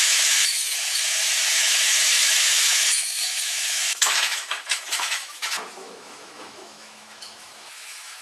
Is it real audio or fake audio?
fake